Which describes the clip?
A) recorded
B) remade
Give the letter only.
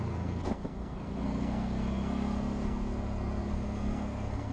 B